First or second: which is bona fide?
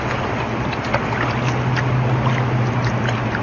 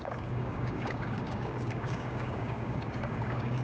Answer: first